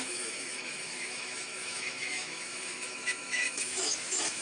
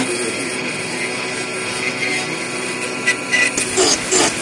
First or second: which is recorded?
second